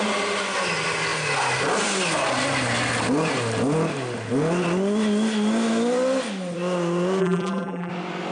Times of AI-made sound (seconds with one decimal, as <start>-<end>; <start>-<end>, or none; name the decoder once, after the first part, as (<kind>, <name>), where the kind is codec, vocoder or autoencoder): 7.2-7.9 (vocoder, BigVGAN v2)